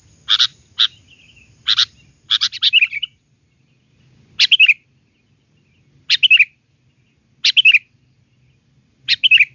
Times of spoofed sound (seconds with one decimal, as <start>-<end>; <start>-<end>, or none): none